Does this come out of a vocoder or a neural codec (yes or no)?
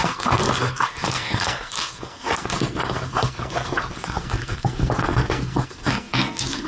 yes